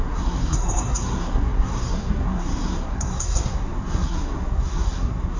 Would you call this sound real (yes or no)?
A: no